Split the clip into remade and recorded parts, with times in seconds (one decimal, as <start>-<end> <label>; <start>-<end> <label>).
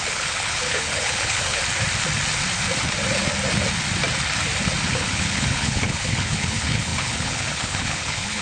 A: 0.0-1.6 remade; 1.6-4.9 recorded; 4.9-8.4 remade